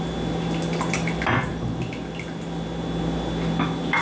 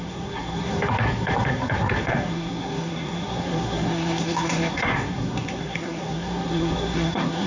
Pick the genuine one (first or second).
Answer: first